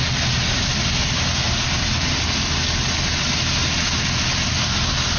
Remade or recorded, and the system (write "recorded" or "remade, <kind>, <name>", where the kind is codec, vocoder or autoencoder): recorded